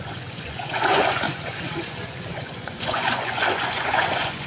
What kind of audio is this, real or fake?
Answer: fake